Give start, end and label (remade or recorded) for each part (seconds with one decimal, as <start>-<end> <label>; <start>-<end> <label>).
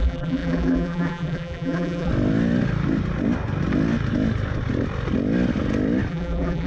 0.0-2.1 remade; 2.1-6.1 recorded; 6.1-6.7 remade